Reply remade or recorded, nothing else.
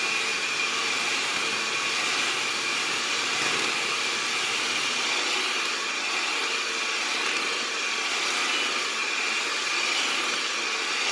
recorded